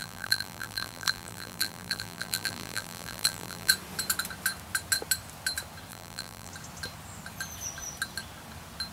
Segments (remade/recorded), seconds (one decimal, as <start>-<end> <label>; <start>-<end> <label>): 0.0-3.7 remade; 3.7-5.9 recorded; 5.9-6.5 remade; 6.5-8.9 recorded